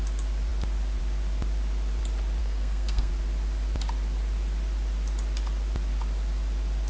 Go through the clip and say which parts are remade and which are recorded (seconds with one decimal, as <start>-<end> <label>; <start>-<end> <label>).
0.0-2.4 recorded; 2.4-3.1 remade; 3.1-6.9 recorded